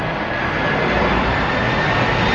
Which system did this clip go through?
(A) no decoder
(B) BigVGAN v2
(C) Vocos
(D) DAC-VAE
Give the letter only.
B